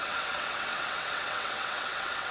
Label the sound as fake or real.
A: fake